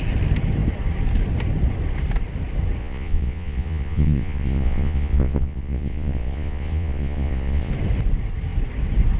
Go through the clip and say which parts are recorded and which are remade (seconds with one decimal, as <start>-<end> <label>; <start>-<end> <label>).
0.0-2.8 recorded; 2.8-7.7 remade; 7.7-9.2 recorded